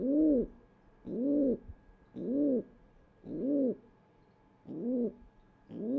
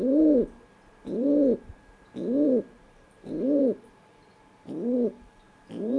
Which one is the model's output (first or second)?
second